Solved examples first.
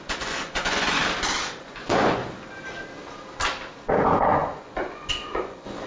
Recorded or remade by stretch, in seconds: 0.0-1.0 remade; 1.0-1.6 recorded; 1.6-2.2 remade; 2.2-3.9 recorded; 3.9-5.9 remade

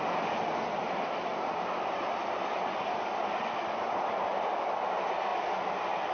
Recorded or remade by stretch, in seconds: 0.0-6.1 recorded

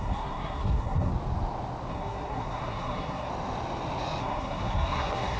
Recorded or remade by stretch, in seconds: 0.0-1.1 remade; 1.1-1.9 recorded; 1.9-3.3 remade; 3.3-4.2 recorded; 4.2-5.4 remade

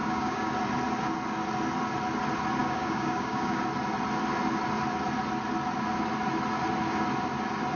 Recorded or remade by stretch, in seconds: 0.0-0.5 remade; 0.5-2.6 recorded; 2.6-3.6 remade; 3.6-7.7 recorded

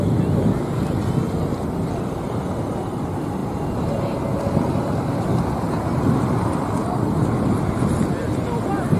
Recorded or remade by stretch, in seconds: 0.0-9.0 recorded

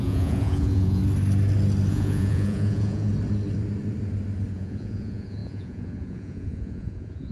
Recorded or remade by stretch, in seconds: 0.0-1.0 remade; 1.0-1.9 recorded; 1.9-3.1 remade; 3.1-4.5 recorded; 4.5-7.3 remade

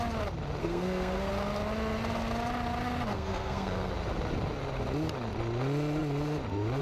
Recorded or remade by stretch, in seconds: 0.0-0.6 recorded; 0.6-1.3 remade; 1.3-3.1 recorded; 3.1-3.9 remade; 3.9-6.8 recorded

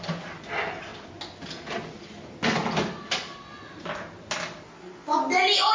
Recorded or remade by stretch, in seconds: 0.0-5.7 recorded